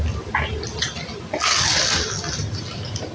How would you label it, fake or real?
real